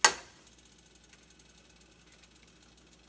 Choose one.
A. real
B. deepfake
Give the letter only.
A